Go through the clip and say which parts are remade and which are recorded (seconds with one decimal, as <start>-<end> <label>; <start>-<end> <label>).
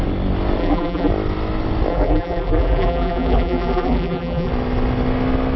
0.0-0.6 recorded; 0.6-1.1 remade; 1.1-1.9 recorded; 1.9-4.5 remade; 4.5-5.6 recorded